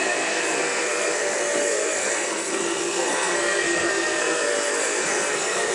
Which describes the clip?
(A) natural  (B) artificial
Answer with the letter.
B